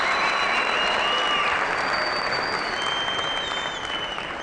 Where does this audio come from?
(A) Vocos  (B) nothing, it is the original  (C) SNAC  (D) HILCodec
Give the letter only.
B